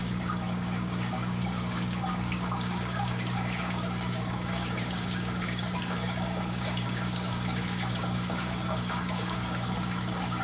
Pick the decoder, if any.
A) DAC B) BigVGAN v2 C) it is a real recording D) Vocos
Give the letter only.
A